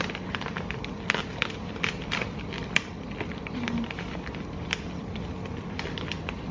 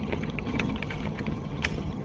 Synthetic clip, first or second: second